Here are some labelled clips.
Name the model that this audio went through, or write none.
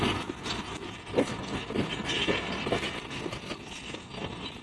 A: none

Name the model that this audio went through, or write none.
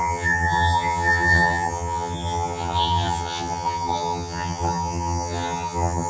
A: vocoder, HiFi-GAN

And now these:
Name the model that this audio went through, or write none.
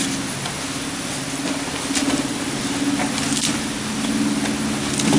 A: none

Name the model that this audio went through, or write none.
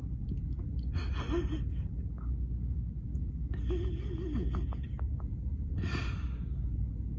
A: none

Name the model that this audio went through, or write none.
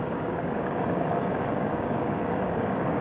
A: codec, DAC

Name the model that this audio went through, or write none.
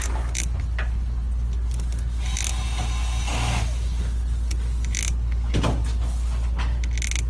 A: none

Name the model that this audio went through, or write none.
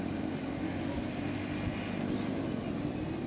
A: none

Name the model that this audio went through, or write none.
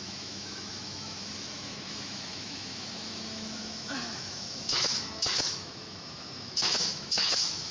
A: autoencoder, DAC-VAE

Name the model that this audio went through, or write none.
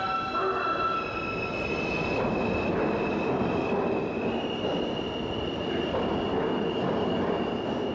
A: none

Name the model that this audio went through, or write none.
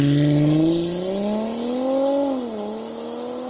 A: none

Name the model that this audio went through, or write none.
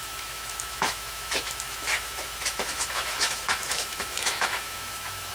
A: autoencoder, DAC-VAE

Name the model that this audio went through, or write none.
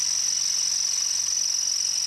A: none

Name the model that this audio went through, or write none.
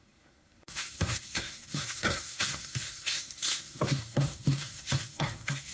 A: codec, SNAC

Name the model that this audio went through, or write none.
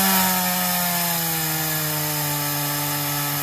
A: none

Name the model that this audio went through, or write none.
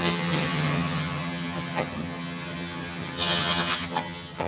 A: vocoder, HiFi-GAN